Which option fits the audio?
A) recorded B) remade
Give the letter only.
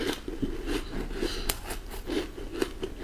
A